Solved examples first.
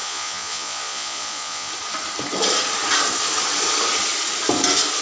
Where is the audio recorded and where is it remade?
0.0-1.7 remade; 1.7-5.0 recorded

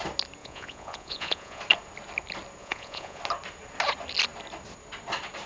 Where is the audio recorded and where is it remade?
0.0-0.4 recorded; 0.4-1.6 remade; 1.6-2.6 recorded; 2.6-3.2 remade; 3.2-5.5 recorded

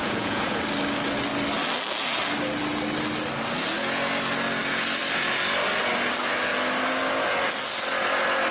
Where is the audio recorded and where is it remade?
0.0-0.6 remade; 0.6-8.5 recorded

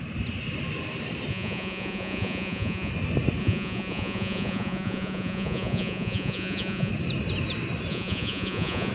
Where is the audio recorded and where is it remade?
0.0-1.3 recorded; 1.3-2.9 remade; 2.9-3.4 recorded; 3.4-6.9 remade; 6.9-7.9 recorded; 7.9-8.9 remade

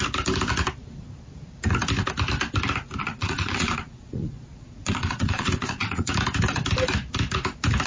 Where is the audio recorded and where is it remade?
0.0-3.0 recorded; 3.0-6.1 remade; 6.1-7.9 recorded

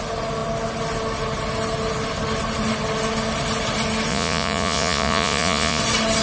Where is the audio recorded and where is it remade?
0.0-4.1 recorded; 4.1-5.8 remade; 5.8-6.2 recorded

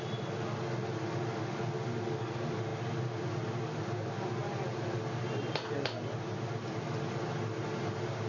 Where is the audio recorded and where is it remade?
0.0-8.3 recorded